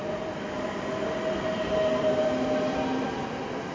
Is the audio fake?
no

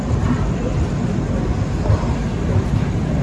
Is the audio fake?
no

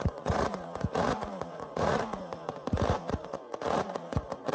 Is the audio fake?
yes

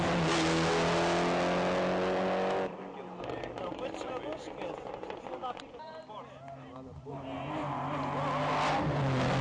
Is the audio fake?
no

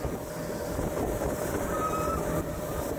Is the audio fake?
no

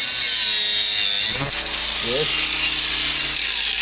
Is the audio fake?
no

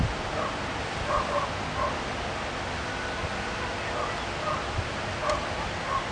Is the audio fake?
no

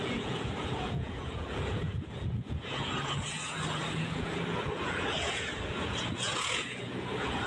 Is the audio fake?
yes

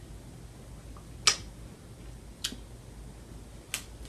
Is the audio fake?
no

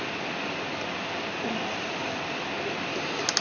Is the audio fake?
no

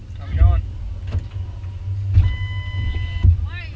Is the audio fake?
no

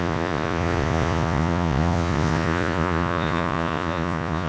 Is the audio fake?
yes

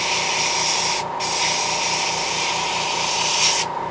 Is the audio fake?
no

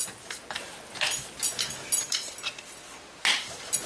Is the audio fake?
no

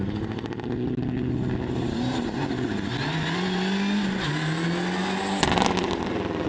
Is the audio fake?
no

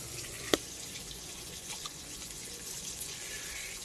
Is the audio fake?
yes